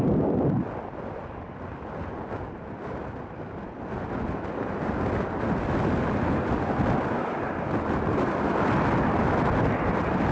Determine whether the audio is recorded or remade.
recorded